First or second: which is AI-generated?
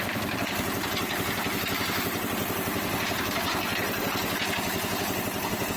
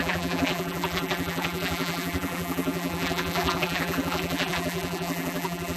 second